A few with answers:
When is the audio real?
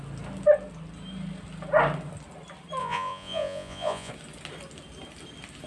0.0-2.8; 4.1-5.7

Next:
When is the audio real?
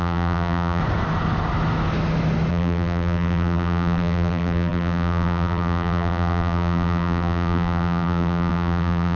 0.8-2.5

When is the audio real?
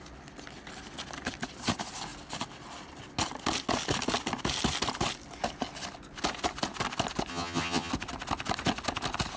0.0-7.3; 7.9-9.4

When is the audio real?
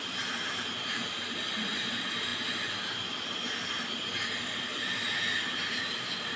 0.0-6.4